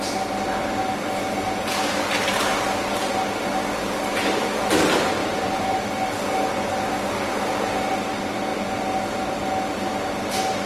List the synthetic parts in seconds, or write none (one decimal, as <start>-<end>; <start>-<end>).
5.2-5.9